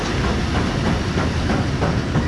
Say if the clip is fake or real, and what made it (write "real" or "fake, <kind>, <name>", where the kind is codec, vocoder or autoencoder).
real